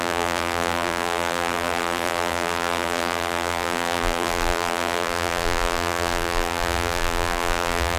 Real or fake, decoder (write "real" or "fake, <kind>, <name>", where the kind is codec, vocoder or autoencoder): fake, vocoder, BigVGAN v2